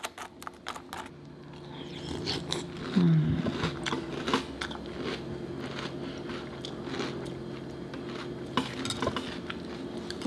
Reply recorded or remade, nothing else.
recorded